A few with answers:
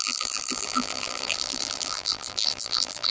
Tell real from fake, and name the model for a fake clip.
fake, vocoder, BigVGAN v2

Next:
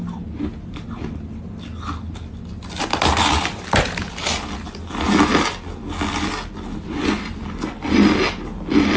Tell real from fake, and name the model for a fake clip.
real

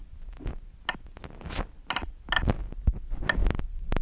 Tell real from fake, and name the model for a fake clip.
real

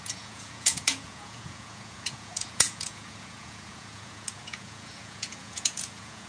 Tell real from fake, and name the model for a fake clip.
fake, vocoder, Vocos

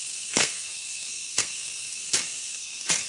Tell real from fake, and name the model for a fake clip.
fake, codec, SNAC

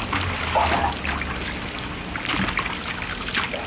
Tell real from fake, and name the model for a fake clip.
real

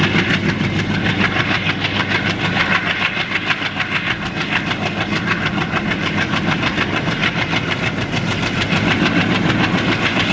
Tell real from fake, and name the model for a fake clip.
real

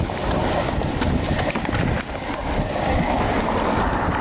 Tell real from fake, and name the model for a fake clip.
real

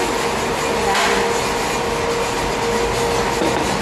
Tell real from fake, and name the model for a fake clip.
real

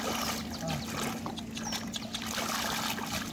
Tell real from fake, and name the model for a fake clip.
real